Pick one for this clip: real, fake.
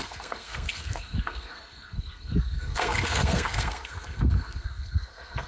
fake